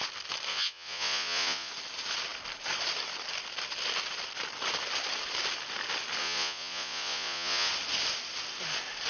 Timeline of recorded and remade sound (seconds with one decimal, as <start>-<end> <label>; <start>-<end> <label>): 0.0-0.5 recorded; 0.5-1.7 remade; 1.7-6.2 recorded; 6.2-7.7 remade; 7.7-9.1 recorded